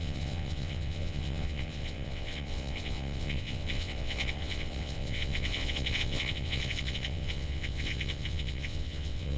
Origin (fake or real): fake